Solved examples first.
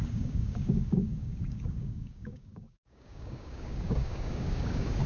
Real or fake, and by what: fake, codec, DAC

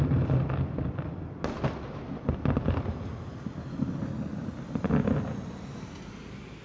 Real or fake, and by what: real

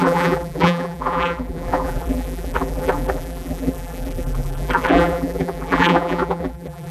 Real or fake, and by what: fake, vocoder, BigVGAN v2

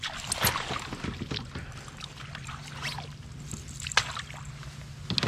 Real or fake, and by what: real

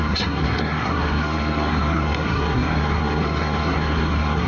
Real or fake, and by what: fake, codec, SNAC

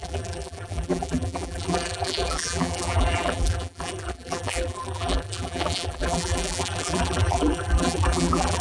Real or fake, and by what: fake, vocoder, BigVGAN v2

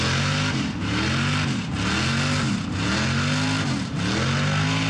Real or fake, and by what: real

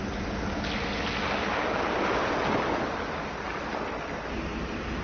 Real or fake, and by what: real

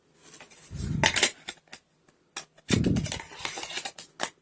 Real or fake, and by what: real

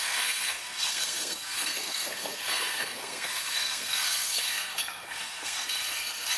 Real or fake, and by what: fake, codec, SNAC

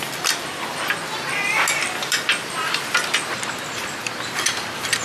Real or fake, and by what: real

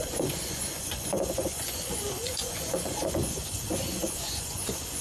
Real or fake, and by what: fake, vocoder, Vocos